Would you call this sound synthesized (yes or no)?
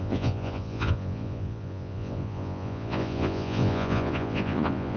yes